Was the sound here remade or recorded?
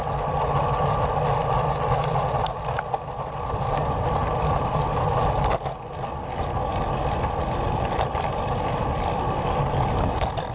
recorded